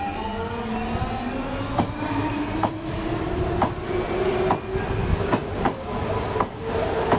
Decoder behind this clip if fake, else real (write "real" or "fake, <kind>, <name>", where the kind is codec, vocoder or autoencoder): real